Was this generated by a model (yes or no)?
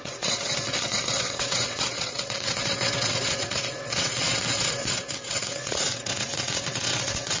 yes